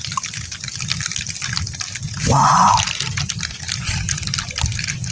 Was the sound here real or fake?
real